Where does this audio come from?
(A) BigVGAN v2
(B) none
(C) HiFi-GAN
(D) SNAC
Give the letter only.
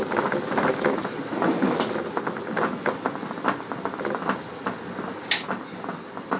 B